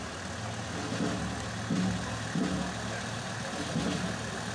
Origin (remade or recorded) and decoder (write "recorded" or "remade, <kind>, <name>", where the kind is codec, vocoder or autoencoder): recorded